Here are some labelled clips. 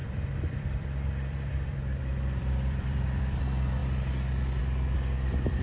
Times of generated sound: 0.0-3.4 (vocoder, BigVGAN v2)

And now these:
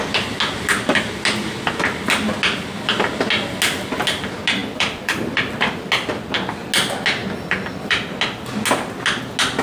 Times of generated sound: 4.6-5.7 (vocoder, BigVGAN v2); 7.2-8.0

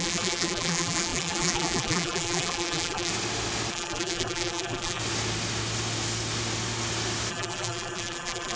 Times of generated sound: 0.0-3.1 (vocoder, BigVGAN v2); 3.7-5.0; 7.3-8.6

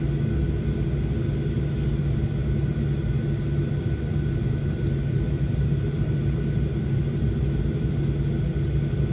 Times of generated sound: 4.1-8.0 (vocoder, BigVGAN v2)

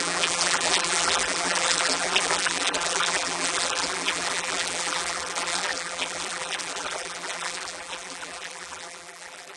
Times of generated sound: 0.0-9.6 (vocoder, BigVGAN v2)